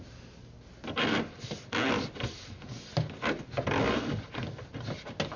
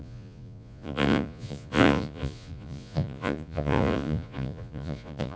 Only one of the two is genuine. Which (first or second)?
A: first